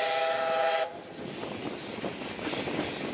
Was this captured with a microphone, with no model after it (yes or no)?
yes